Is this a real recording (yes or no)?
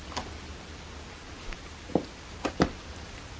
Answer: yes